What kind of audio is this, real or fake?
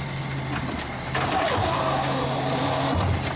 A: real